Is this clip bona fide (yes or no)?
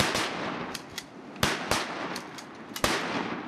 yes